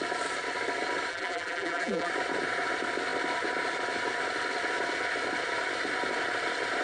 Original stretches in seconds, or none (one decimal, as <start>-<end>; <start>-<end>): 0.0-1.1; 2.1-6.8